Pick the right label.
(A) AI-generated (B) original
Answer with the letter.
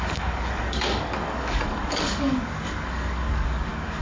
A